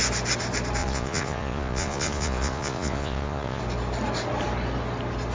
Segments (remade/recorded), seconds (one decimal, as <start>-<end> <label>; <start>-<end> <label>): 0.0-0.8 recorded; 0.8-3.6 remade; 3.6-5.3 recorded